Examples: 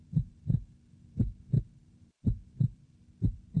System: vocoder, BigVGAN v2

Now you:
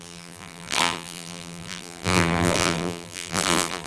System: vocoder, BigVGAN v2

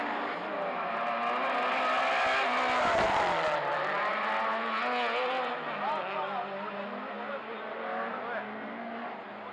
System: none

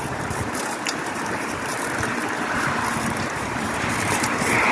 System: vocoder, BigVGAN v2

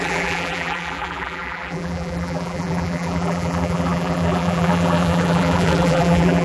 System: vocoder, BigVGAN v2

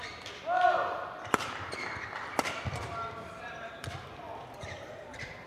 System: vocoder, BigVGAN v2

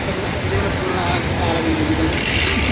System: none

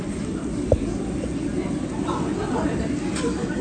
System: none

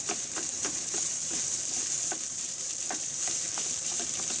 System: vocoder, BigVGAN v2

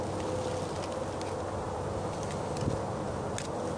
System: none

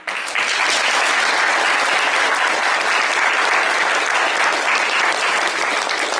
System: none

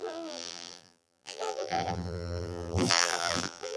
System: vocoder, BigVGAN v2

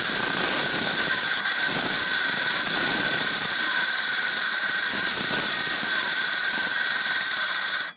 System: vocoder, BigVGAN v2